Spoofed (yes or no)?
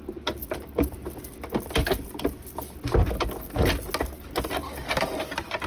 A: no